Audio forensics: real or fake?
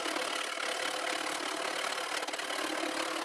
real